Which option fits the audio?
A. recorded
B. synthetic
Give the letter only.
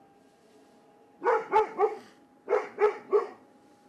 A